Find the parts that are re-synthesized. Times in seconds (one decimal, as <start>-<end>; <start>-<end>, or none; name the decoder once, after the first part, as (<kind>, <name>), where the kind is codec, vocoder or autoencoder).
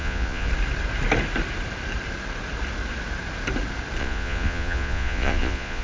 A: 0.0-0.5 (vocoder, Vocos); 4.0-5.8